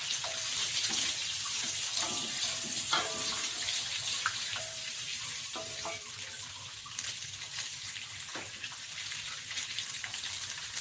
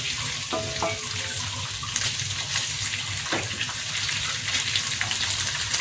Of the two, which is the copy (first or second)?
first